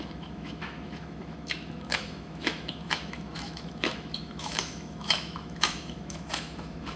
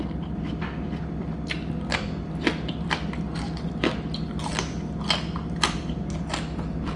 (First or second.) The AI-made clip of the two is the first